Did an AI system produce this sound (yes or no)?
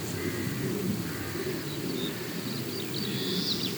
no